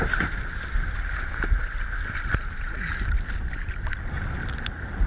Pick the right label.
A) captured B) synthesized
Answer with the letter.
A